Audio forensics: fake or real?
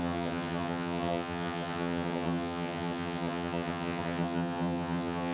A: fake